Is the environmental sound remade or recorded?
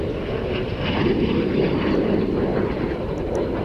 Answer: recorded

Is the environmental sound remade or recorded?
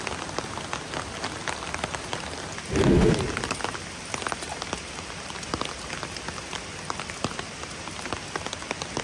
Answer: recorded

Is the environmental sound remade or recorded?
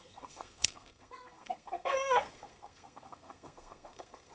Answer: remade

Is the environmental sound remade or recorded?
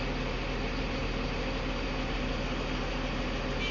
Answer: recorded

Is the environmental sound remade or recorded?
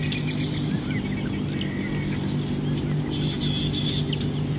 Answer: recorded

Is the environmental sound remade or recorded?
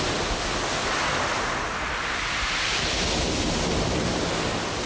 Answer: recorded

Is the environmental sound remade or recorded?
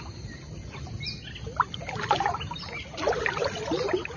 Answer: recorded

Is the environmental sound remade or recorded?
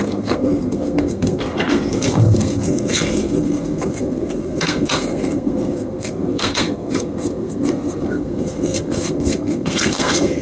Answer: remade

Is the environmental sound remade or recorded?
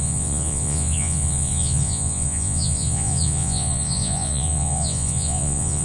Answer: remade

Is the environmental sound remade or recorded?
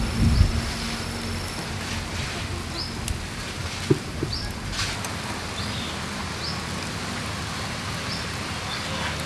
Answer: recorded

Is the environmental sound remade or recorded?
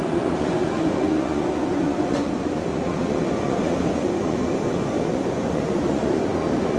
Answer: remade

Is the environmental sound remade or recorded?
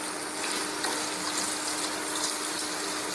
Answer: recorded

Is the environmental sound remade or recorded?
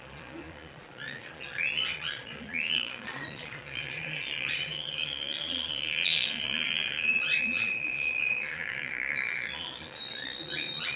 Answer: remade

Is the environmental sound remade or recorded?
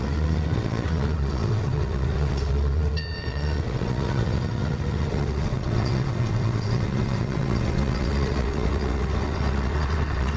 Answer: remade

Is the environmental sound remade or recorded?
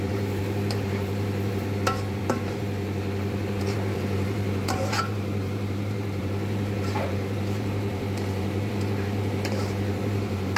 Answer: remade